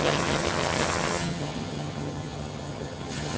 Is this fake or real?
fake